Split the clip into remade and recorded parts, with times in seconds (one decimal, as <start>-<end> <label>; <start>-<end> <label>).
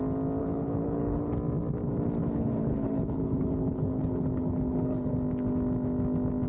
0.0-0.4 recorded; 0.4-1.3 remade; 1.3-2.2 recorded; 2.2-5.1 remade; 5.1-6.5 recorded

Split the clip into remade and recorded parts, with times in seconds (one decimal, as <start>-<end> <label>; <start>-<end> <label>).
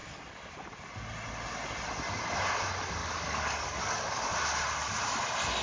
0.0-3.0 recorded; 3.0-4.2 remade; 4.2-5.6 recorded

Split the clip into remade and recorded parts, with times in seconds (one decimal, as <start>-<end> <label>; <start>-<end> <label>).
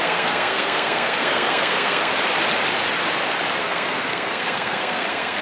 0.0-2.1 remade; 2.1-3.6 recorded; 3.6-5.4 remade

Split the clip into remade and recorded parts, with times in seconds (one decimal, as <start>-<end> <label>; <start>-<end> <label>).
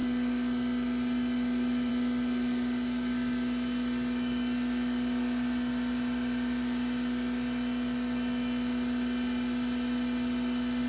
0.0-10.9 recorded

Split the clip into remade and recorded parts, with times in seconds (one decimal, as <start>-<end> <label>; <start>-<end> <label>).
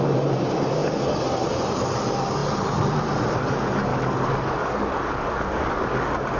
0.0-3.9 recorded; 3.9-6.4 remade